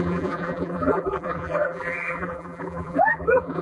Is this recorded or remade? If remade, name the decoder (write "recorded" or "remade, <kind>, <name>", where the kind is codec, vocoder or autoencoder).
remade, vocoder, BigVGAN v2